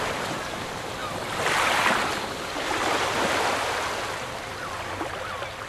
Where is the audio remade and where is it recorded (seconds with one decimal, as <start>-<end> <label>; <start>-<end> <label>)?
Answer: 0.0-5.7 recorded